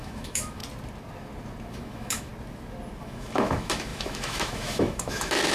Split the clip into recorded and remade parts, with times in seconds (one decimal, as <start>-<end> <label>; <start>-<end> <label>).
0.0-0.6 remade; 0.6-1.7 recorded; 1.7-2.3 remade; 2.3-3.0 recorded; 3.0-5.5 remade